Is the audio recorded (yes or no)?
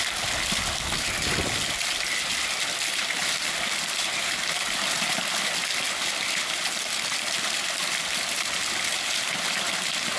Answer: yes